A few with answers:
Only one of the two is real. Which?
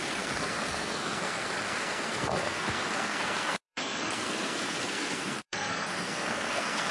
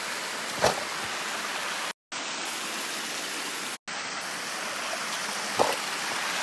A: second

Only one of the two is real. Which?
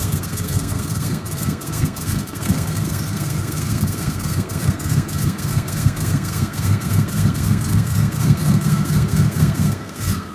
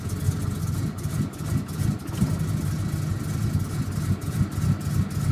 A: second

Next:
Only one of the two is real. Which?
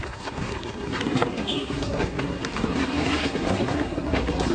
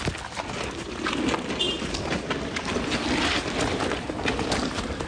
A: second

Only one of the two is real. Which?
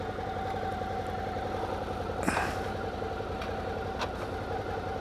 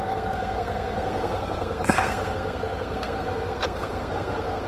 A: first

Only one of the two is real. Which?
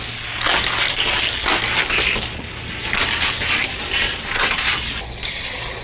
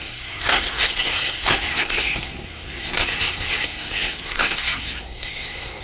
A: first